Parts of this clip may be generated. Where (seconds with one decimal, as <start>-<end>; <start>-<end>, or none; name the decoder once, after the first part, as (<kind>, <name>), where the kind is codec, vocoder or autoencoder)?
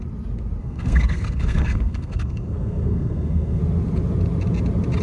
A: 0.6-3.6 (codec, SNAC)